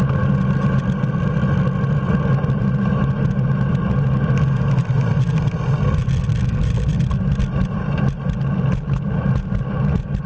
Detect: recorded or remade recorded